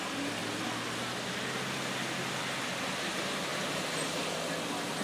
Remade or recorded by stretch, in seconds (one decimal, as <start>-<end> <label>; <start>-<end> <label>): 0.0-5.0 recorded

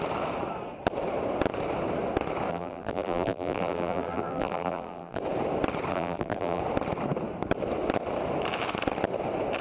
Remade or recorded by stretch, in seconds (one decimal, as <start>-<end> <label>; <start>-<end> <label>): 0.0-2.5 recorded; 2.5-5.2 remade; 5.2-5.9 recorded; 5.9-6.6 remade; 6.6-9.6 recorded

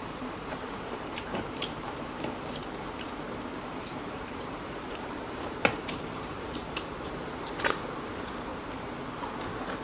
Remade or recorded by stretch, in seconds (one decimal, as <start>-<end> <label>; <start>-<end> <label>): 0.0-2.6 remade; 2.6-3.9 recorded; 3.9-8.5 remade; 8.5-9.8 recorded

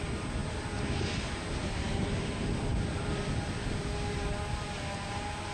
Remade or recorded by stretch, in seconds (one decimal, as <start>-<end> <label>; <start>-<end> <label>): 0.0-5.5 recorded

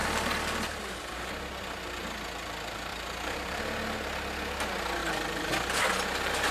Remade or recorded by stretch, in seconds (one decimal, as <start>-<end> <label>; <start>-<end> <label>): 0.0-2.9 recorded; 2.9-3.6 remade; 3.6-5.0 recorded; 5.0-5.5 remade; 5.5-6.5 recorded

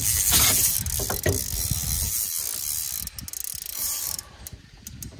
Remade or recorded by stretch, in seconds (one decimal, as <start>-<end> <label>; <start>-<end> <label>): 0.0-3.7 recorded; 3.7-5.2 remade